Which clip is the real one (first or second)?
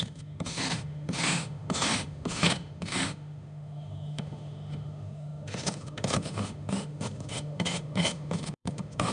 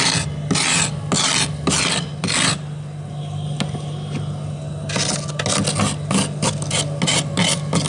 second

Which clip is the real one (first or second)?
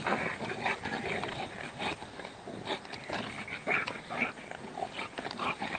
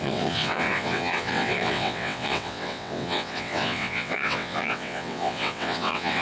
first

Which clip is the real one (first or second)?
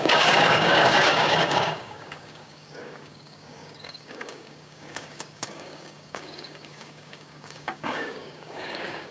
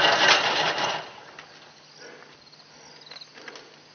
second